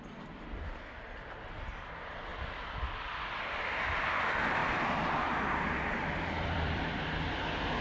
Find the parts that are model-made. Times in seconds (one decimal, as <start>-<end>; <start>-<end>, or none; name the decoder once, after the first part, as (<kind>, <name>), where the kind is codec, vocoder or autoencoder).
2.3-2.8 (vocoder, BigVGAN v2); 4.6-6.9